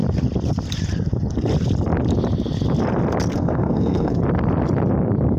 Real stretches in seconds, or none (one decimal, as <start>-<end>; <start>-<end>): 0.0-3.3; 4.2-5.4